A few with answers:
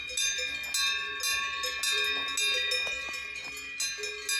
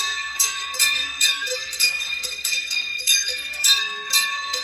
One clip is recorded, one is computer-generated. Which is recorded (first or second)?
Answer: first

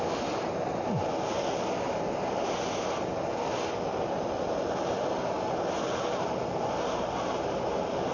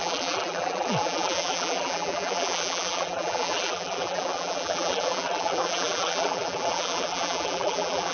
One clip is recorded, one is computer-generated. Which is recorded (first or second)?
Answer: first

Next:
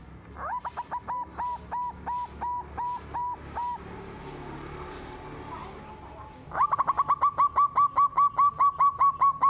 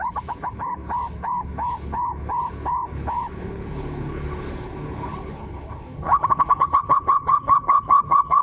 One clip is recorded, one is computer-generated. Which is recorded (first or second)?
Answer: first